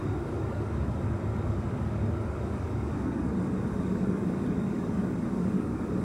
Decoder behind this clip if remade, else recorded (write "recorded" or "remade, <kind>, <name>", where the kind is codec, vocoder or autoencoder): remade, codec, DAC